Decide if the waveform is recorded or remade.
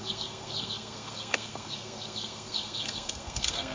remade